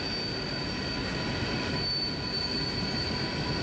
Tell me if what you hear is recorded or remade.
recorded